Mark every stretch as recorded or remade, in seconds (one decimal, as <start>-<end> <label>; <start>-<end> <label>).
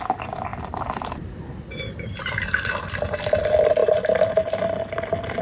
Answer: 0.0-0.5 remade; 0.5-3.4 recorded; 3.4-3.8 remade; 3.8-5.4 recorded